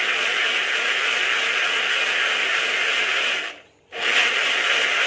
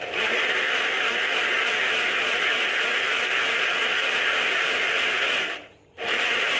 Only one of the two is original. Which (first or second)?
first